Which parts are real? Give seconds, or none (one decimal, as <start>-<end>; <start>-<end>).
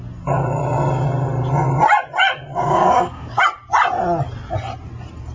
0.0-2.5; 3.4-5.3